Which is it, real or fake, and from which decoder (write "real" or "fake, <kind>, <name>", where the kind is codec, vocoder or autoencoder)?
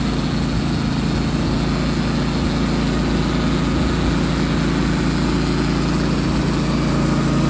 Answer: real